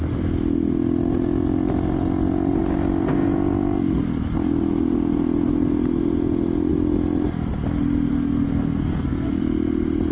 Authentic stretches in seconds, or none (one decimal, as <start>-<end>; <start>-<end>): 0.0-8.1; 9.4-10.1